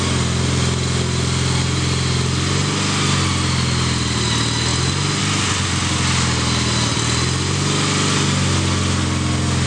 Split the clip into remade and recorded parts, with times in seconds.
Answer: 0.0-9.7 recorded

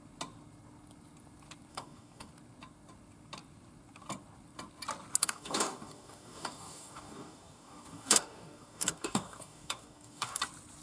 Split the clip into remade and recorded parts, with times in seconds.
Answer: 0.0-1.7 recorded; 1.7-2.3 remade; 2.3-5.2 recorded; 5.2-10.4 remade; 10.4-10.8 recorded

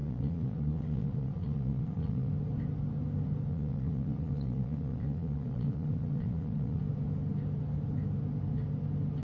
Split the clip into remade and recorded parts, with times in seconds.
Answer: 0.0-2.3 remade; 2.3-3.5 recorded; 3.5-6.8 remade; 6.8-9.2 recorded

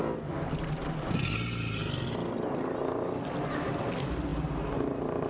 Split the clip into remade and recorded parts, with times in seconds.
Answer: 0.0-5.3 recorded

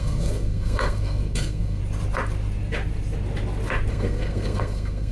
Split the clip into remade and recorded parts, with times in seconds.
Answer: 0.0-1.8 remade; 1.8-3.9 recorded; 3.9-5.1 remade

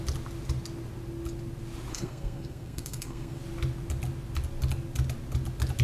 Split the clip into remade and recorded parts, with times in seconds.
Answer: 0.0-1.9 recorded; 1.9-3.4 remade; 3.4-5.8 recorded

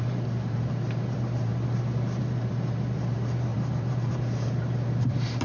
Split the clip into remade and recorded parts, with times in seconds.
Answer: 0.0-1.5 remade; 1.5-2.2 recorded; 2.2-5.4 remade

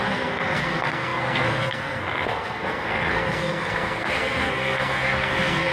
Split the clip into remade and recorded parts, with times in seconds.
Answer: 0.0-5.7 remade